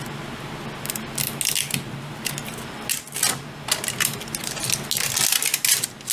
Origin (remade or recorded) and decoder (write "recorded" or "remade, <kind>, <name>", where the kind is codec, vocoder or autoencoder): recorded